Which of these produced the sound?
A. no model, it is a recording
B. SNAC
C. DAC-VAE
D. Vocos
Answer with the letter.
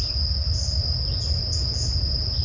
A